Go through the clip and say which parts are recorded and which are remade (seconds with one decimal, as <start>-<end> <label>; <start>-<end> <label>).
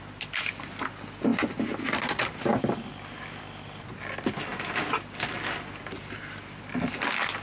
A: 0.0-7.4 recorded